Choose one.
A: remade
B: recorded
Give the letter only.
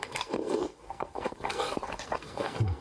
A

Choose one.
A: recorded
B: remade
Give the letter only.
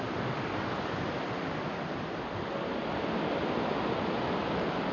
A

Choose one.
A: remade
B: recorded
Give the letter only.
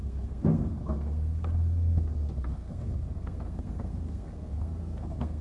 A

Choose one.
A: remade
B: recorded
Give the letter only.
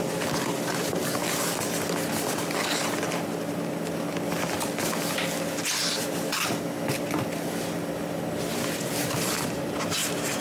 B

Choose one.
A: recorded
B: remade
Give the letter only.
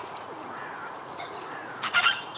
B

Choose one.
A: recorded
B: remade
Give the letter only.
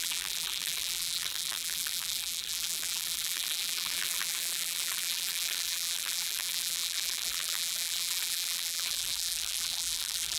B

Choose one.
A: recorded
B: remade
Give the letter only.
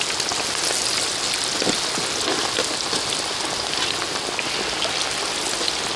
A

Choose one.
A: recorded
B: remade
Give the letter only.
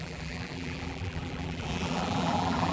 B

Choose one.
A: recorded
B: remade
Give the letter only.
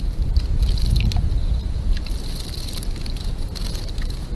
A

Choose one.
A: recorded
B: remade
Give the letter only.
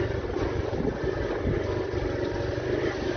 A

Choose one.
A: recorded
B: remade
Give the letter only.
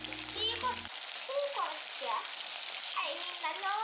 A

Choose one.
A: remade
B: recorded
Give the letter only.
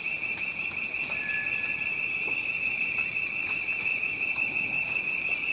B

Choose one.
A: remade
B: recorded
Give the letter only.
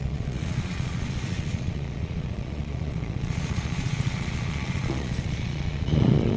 A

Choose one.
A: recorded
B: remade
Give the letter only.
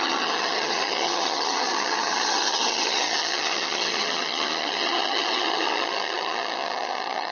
B